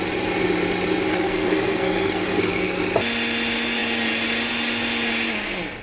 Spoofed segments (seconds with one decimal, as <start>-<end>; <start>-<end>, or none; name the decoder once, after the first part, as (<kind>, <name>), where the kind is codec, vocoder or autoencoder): 1.1-2.8 (codec, SNAC)